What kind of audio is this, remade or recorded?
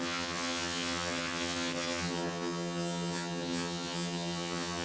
remade